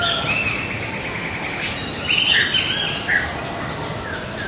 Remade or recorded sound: recorded